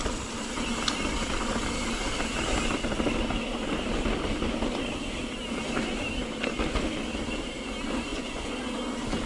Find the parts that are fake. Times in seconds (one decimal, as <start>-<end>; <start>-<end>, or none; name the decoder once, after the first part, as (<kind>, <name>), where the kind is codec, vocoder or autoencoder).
8.1-8.6 (vocoder, Vocos)